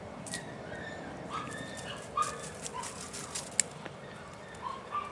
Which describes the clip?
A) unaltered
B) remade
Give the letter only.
A